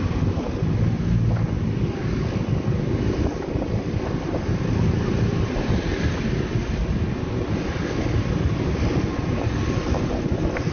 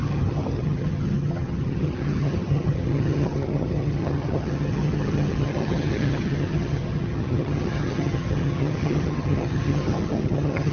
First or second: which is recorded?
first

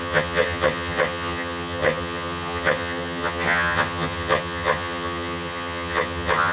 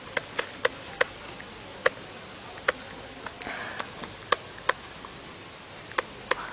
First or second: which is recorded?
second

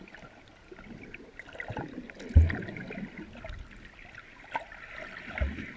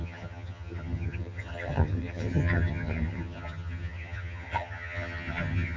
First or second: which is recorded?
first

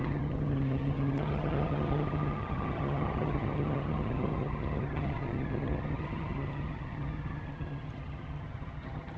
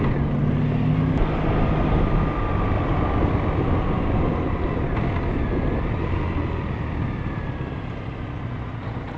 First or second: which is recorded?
second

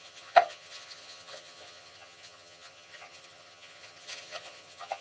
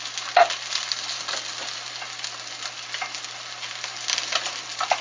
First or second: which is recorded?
second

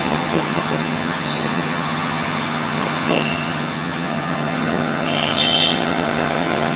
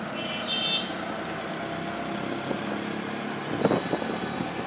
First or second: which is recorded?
second